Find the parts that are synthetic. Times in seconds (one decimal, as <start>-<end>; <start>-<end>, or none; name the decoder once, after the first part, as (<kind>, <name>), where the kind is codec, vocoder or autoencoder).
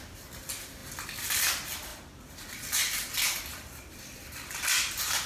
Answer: 1.9-2.4 (vocoder, BigVGAN v2); 3.5-5.3